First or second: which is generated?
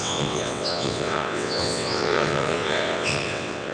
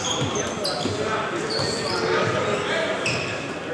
first